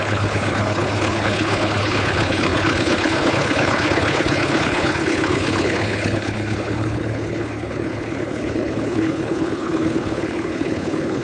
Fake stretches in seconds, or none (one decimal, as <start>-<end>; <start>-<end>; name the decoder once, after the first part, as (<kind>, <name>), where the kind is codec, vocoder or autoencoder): 0.0-11.2 (codec, HILCodec)